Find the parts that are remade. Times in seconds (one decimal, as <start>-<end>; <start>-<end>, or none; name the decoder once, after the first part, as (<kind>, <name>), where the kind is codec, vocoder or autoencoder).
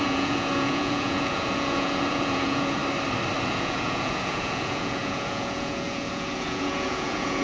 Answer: 0.0-2.8 (vocoder, Vocos); 3.5-7.4